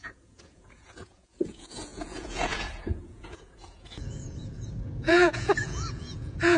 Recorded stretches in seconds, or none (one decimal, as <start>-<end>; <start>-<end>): none